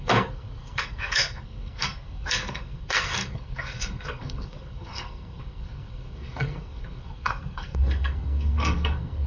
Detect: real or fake fake